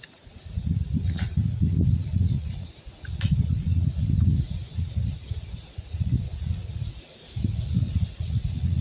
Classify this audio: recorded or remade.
remade